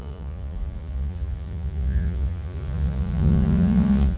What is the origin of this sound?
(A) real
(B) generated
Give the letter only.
B